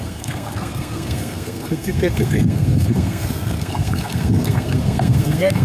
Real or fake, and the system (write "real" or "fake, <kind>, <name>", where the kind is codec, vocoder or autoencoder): fake, codec, SNAC